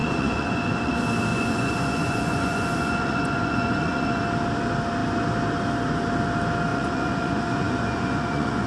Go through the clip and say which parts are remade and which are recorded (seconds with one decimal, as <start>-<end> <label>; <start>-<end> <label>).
0.0-0.9 remade; 0.9-1.3 recorded; 1.3-4.2 remade; 4.2-6.7 recorded; 6.7-8.7 remade